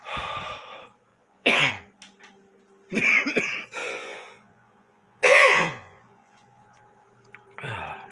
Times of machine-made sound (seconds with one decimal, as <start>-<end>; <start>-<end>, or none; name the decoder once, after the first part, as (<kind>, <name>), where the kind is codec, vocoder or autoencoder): 1.1-1.7 (vocoder, Vocos); 3.8-6.8